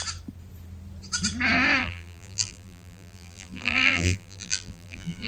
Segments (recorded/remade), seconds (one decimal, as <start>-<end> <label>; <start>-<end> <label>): 0.0-1.8 recorded; 1.8-5.3 remade